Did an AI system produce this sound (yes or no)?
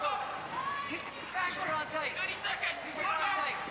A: no